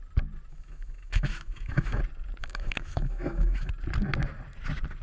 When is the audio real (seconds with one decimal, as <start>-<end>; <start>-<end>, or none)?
0.0-0.5; 2.0-2.4; 3.7-5.0